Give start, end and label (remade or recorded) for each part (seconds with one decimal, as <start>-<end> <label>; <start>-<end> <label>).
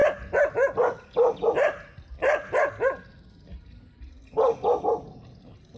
0.0-5.8 recorded